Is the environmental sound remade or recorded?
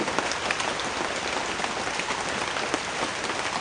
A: recorded